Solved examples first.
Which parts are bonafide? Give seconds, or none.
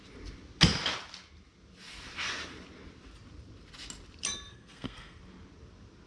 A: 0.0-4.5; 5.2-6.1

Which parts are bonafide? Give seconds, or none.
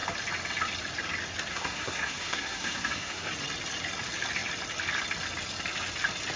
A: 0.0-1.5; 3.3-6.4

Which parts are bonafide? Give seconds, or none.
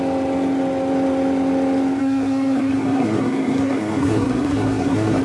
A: 0.0-2.0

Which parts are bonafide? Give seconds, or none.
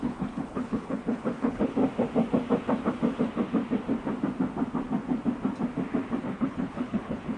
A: 1.8-6.2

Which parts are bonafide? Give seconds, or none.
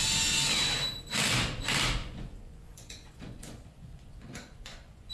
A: 0.0-2.0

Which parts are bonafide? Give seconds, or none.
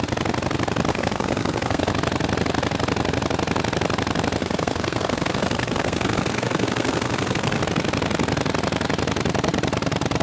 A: 0.0-0.9; 1.9-4.4; 7.6-10.2